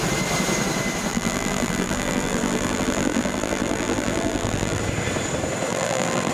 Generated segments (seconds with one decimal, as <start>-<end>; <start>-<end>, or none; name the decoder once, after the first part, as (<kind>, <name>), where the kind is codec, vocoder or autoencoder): 1.1-4.8 (vocoder, BigVGAN v2); 5.7-6.3